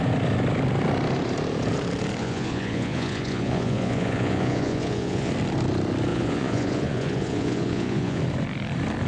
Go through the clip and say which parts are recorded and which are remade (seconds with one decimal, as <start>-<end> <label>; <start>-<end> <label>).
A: 0.0-2.2 recorded; 2.2-5.3 remade; 5.3-6.1 recorded; 6.1-8.2 remade; 8.2-9.1 recorded